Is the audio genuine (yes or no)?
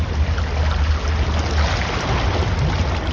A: yes